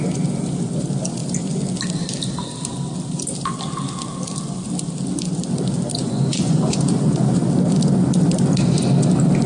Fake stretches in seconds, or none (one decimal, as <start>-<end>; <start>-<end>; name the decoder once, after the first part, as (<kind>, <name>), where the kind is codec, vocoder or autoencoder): 6.0-7.4 (vocoder, Vocos)